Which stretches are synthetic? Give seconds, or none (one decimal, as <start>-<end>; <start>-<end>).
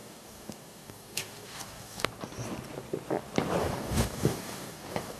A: 0.0-2.1; 3.6-5.2